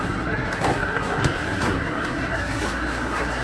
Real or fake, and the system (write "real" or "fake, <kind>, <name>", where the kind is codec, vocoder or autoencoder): fake, codec, SNAC